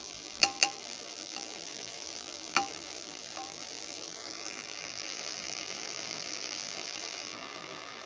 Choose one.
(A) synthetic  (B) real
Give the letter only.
A